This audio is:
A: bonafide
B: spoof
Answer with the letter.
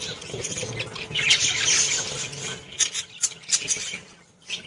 A